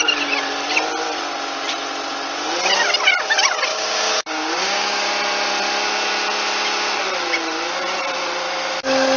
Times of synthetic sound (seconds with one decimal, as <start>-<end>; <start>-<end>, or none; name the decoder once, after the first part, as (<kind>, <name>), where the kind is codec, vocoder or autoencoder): 3.7-5.1 (codec, DAC)